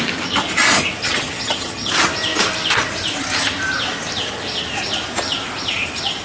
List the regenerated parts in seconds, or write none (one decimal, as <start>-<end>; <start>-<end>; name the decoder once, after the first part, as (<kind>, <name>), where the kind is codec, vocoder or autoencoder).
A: 1.0-1.9 (vocoder, HiFi-GAN)